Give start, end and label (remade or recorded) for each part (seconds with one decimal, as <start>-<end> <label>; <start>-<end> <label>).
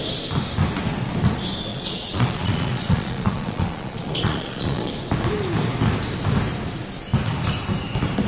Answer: 0.0-1.7 recorded; 1.7-4.9 remade; 4.9-8.3 recorded